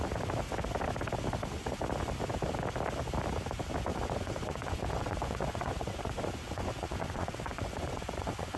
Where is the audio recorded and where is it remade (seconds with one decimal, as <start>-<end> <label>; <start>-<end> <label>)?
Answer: 0.0-3.9 recorded; 3.9-8.6 remade